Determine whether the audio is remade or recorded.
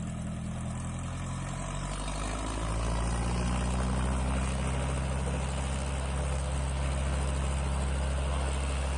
recorded